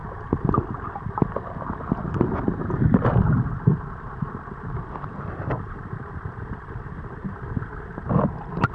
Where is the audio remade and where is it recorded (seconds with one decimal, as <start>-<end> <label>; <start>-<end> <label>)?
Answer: 0.0-4.7 recorded; 4.7-8.7 remade

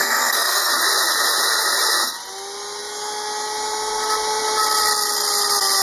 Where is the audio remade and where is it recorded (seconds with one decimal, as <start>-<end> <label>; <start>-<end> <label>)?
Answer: 0.0-0.7 remade; 0.7-5.8 recorded

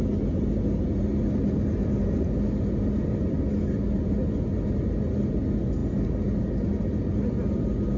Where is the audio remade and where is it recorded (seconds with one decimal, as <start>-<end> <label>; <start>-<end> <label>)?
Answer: 0.0-8.0 recorded

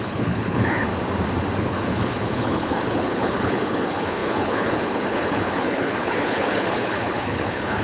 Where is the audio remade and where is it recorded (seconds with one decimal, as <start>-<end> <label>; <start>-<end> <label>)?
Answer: 0.0-0.9 remade; 0.9-1.6 recorded; 1.6-7.8 remade